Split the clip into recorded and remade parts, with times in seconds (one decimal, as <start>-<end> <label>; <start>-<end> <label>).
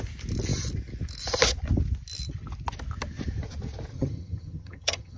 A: 0.0-3.9 recorded; 3.9-5.2 remade